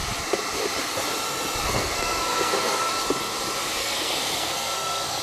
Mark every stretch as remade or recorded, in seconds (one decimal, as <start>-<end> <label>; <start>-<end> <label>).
0.0-1.6 recorded; 1.6-2.9 remade; 2.9-3.8 recorded; 3.8-5.2 remade